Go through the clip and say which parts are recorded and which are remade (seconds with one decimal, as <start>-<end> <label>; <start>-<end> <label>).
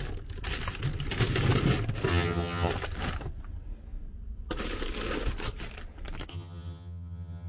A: 0.0-2.1 recorded; 2.1-2.7 remade; 2.7-6.3 recorded; 6.3-7.5 remade